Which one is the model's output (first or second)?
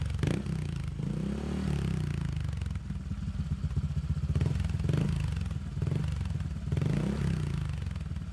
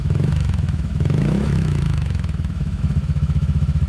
second